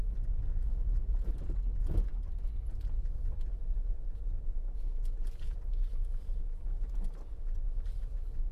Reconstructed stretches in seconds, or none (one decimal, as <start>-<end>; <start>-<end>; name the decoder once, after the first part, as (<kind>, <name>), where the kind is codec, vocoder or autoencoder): 0.4-1.3 (vocoder, Vocos)